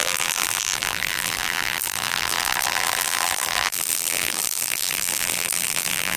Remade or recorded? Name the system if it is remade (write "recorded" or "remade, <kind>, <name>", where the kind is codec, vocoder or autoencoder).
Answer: remade, vocoder, BigVGAN v2